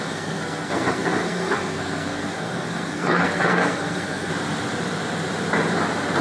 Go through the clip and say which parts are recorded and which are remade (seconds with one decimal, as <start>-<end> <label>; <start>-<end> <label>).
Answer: 0.0-4.3 remade; 4.3-6.2 recorded